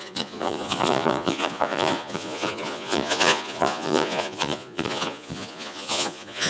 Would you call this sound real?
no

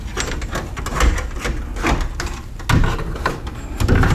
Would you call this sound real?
yes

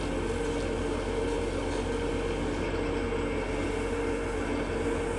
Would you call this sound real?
yes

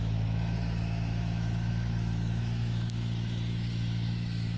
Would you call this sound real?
no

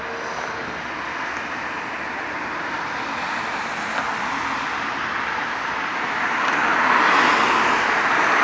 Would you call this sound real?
yes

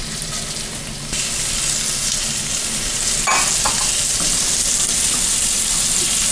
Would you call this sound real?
yes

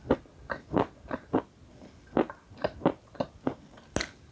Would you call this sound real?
yes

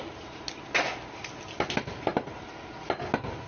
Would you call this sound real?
yes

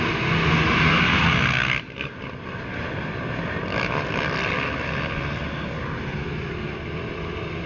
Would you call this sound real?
yes